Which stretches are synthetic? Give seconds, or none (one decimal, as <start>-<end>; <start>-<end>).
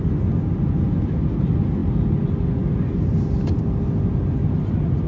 none